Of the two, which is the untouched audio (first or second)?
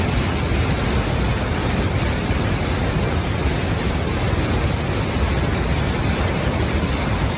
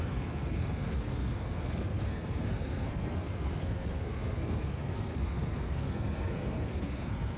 first